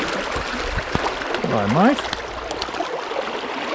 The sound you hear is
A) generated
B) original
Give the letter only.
B